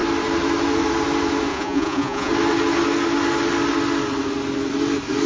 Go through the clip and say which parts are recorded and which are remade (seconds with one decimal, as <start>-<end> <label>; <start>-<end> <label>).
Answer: 0.0-1.5 recorded; 1.5-2.3 remade; 2.3-5.3 recorded